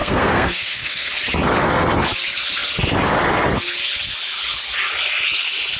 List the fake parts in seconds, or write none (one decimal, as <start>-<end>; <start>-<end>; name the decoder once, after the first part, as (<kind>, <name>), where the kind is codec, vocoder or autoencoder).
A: 0.0-1.1 (codec, SNAC)